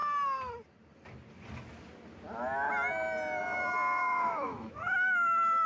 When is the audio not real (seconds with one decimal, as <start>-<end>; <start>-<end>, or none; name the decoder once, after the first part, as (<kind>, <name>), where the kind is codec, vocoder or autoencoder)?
4.0-5.7 (autoencoder, DAC-VAE)